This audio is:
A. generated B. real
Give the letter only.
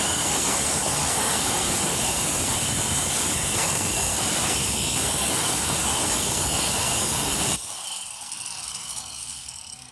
A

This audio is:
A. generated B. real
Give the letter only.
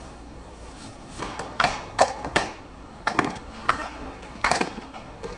A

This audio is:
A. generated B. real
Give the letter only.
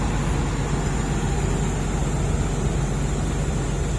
B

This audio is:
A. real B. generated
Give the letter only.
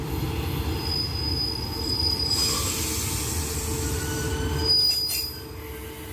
A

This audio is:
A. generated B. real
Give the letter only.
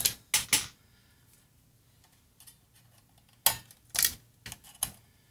B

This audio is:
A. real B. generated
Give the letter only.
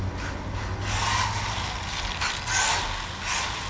A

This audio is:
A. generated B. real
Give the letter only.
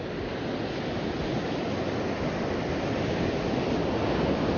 B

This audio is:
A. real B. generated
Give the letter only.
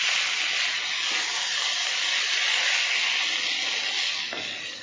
A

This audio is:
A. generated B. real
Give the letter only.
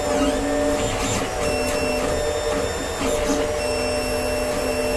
B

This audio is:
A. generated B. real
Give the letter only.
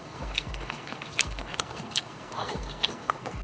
A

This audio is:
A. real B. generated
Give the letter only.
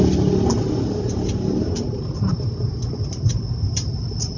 A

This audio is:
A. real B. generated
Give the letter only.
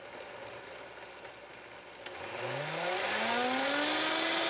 A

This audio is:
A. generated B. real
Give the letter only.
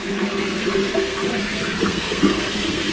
A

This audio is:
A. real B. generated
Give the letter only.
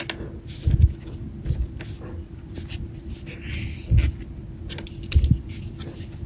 A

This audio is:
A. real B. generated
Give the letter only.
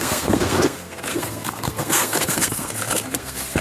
B